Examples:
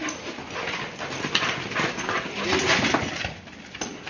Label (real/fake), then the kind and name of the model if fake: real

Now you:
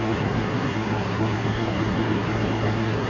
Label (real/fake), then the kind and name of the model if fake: fake, codec, SNAC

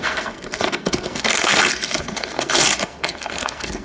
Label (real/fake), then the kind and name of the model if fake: fake, codec, SNAC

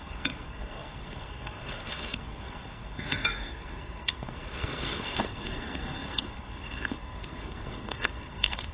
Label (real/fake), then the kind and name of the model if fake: fake, codec, SNAC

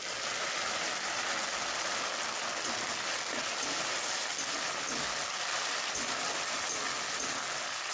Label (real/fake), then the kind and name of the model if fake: real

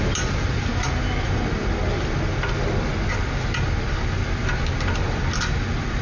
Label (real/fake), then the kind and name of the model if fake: real